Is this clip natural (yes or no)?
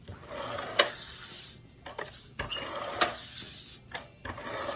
yes